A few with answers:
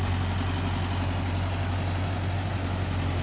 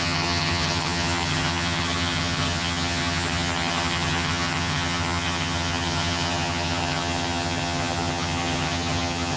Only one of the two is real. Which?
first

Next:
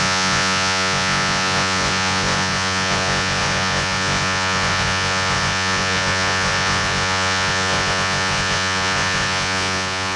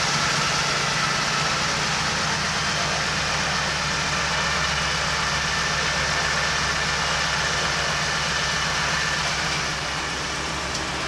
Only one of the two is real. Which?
second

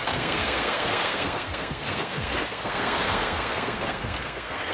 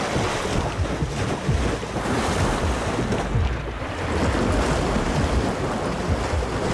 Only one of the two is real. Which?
second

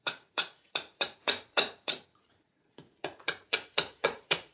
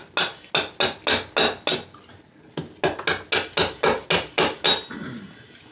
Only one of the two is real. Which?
second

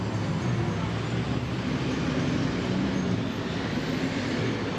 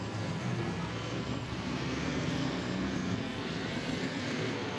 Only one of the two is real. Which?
first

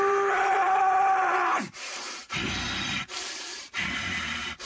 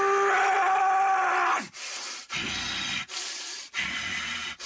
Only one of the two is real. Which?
second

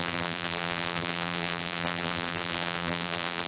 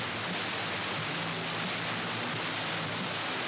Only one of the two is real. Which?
second